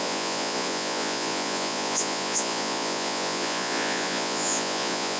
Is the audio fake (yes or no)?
yes